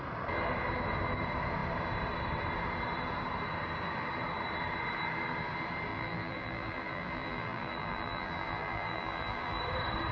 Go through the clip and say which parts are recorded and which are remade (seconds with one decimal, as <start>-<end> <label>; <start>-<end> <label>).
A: 0.0-5.9 recorded; 5.9-9.6 remade; 9.6-10.1 recorded